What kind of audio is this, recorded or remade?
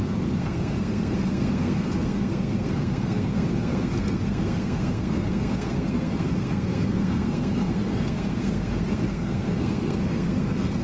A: remade